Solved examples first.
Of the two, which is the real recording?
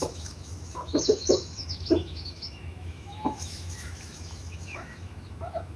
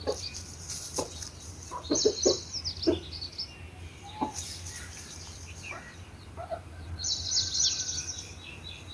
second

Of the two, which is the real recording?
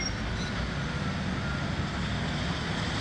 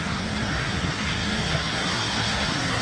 first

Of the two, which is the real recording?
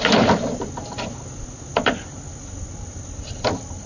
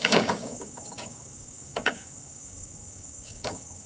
first